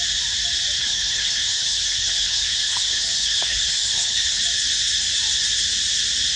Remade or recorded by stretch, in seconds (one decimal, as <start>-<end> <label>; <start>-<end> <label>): 0.0-0.8 recorded; 0.8-4.4 remade; 4.4-6.4 recorded